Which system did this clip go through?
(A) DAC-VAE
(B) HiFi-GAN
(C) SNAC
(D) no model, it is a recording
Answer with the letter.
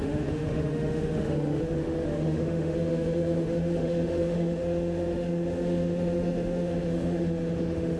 A